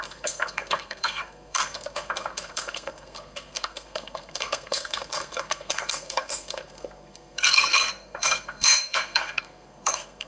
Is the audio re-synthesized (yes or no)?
yes